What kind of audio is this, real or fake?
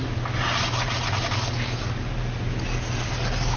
real